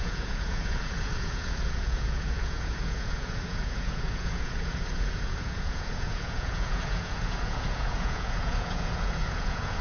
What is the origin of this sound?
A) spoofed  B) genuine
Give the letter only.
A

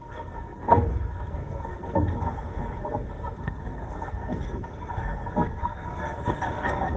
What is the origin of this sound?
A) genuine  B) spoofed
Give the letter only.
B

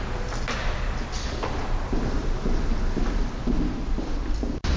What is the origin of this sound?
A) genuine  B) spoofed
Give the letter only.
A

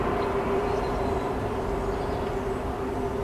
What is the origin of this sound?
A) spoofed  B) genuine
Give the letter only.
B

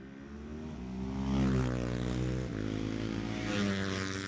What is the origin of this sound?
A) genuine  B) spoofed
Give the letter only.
A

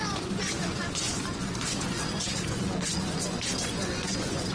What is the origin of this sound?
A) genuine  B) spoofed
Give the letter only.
B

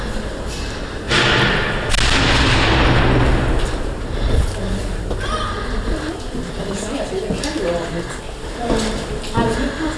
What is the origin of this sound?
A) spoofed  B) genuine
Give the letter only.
B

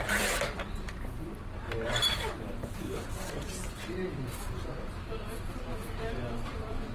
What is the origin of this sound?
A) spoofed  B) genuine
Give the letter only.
A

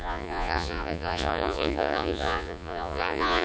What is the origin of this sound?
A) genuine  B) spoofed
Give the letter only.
B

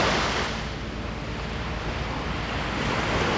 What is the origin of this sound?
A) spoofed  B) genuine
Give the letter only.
B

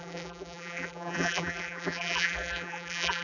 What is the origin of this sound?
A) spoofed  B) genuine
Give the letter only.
A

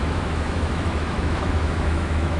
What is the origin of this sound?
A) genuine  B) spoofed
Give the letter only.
B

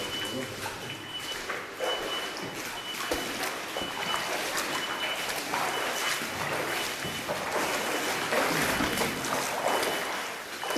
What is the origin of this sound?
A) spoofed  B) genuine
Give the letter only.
B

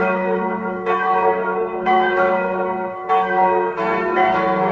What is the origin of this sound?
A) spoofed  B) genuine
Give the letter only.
A